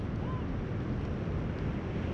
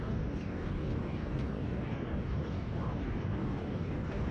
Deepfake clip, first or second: second